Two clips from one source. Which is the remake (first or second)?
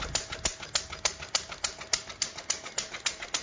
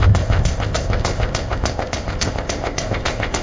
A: second